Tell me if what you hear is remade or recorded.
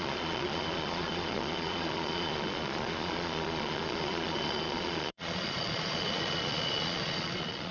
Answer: remade